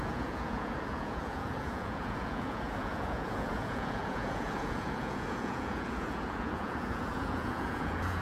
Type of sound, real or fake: fake